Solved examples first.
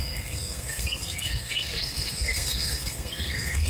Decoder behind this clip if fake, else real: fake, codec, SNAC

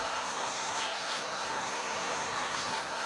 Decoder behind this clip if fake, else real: fake, codec, SNAC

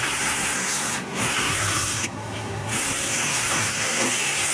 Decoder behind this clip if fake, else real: fake, codec, SNAC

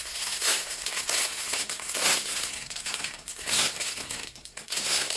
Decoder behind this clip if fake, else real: fake, codec, SNAC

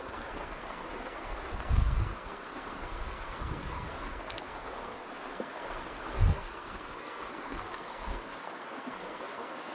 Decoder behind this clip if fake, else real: fake, codec, SNAC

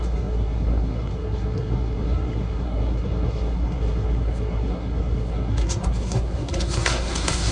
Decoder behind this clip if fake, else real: fake, codec, SNAC